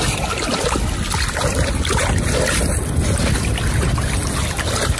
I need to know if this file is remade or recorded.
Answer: recorded